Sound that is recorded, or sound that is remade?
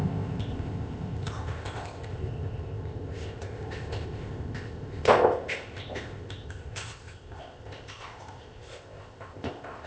remade